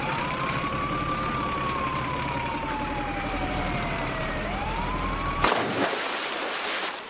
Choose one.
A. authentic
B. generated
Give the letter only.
B